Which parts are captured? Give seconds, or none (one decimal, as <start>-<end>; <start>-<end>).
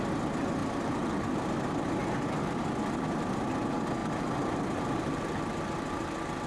0.0-0.6; 1.5-2.0; 2.6-4.0